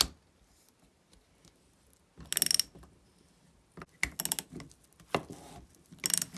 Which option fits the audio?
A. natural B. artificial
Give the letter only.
A